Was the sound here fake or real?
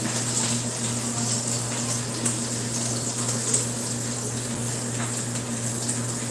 real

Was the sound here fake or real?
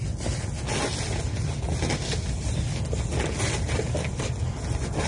real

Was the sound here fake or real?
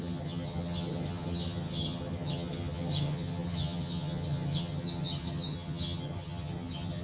fake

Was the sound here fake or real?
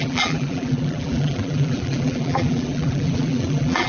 fake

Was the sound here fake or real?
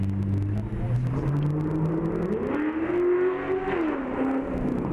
real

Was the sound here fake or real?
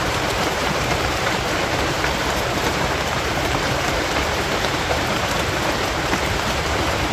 fake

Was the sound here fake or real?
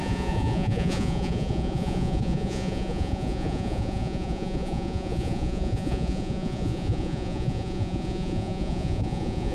fake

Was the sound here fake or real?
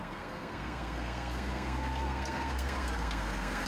fake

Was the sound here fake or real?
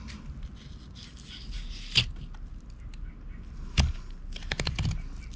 real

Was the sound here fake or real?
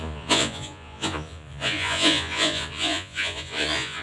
fake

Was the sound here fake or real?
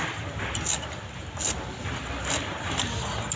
real